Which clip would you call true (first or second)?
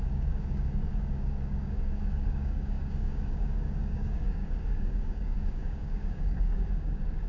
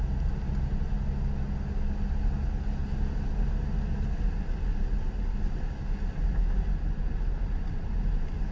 second